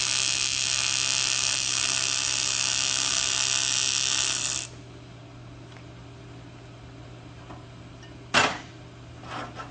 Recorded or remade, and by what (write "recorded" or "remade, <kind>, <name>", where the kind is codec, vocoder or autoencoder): recorded